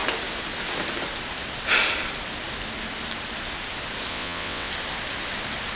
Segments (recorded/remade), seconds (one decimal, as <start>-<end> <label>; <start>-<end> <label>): 0.0-4.1 recorded; 4.1-4.7 remade; 4.7-5.8 recorded